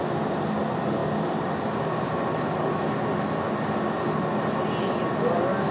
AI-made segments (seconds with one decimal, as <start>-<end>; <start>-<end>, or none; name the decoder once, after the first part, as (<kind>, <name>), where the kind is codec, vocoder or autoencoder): none